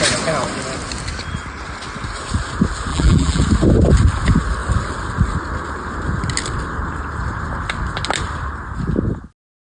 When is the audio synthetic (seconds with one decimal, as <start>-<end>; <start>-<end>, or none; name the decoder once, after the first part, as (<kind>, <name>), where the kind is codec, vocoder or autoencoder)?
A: 2.9-3.4 (vocoder, BigVGAN v2)